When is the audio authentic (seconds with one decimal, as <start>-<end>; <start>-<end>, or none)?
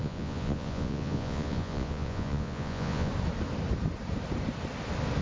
3.1-5.2